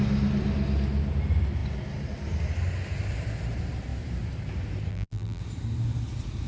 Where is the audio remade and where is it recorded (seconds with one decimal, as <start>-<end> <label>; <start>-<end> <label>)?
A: 0.0-4.9 recorded; 4.9-5.4 remade; 5.4-6.5 recorded